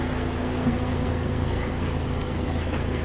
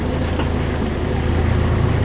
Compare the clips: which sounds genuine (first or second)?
second